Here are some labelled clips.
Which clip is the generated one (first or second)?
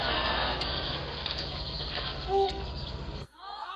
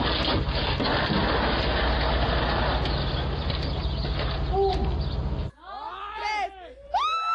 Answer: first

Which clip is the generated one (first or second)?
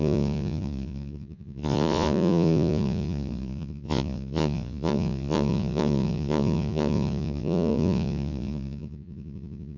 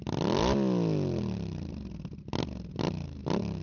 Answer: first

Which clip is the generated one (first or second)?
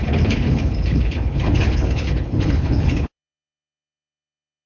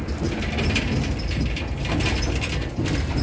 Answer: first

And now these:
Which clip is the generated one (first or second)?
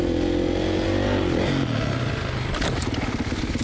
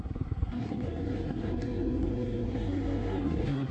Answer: second